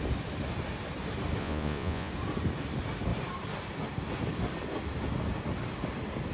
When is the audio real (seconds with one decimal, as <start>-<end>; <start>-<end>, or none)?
0.0-1.4; 2.1-6.3